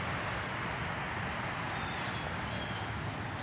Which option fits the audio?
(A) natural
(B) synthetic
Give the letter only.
A